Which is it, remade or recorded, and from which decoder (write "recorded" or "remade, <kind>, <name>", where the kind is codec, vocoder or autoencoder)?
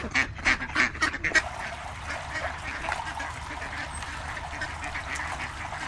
recorded